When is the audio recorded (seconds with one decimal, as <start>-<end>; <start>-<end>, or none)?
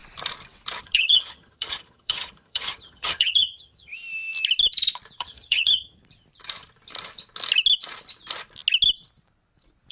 0.0-0.8; 3.9-5.2; 6.0-9.9